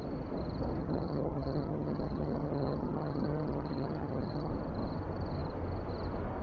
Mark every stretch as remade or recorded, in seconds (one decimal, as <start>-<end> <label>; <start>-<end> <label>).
0.0-0.8 recorded; 0.8-4.5 remade; 4.5-6.4 recorded

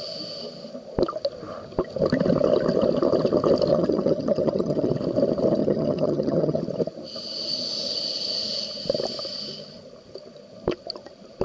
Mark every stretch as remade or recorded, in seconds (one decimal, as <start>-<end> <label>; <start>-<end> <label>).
0.0-3.7 recorded; 3.7-4.9 remade; 4.9-5.6 recorded; 5.6-6.6 remade; 6.6-11.4 recorded

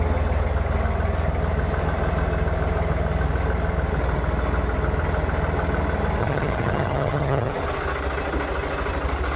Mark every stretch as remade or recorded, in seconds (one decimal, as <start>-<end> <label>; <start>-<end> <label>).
0.0-6.2 recorded; 6.2-7.5 remade; 7.5-9.4 recorded